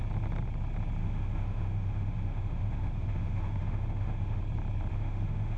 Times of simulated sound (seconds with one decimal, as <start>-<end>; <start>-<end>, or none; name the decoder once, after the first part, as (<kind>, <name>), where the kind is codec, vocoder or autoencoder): 1.0-4.4 (autoencoder, DAC-VAE); 4.9-5.6